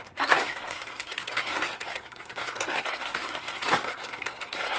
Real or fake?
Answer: fake